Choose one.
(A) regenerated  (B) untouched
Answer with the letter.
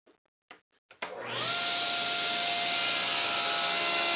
B